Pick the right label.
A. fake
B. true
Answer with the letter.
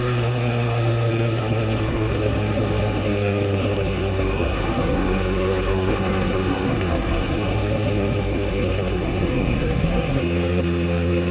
A